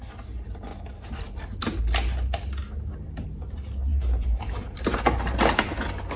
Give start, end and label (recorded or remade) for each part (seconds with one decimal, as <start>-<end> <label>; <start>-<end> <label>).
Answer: 0.0-3.9 recorded; 3.9-5.8 remade; 5.8-6.2 recorded